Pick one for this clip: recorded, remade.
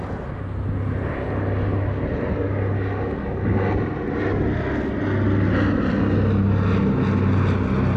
recorded